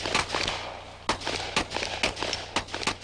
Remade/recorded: recorded